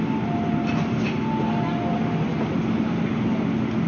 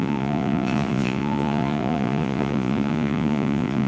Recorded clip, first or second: first